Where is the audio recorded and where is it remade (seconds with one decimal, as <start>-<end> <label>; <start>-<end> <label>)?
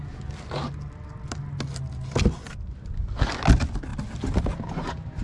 0.0-5.2 recorded